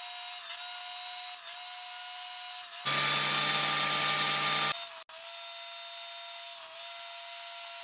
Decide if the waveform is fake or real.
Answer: real